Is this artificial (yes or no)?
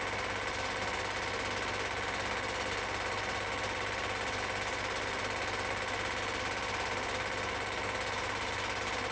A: no